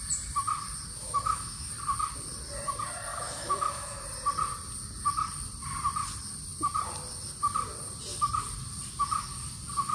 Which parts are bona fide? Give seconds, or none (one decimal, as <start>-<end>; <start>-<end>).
0.0-1.0; 1.7-3.1; 4.0-9.9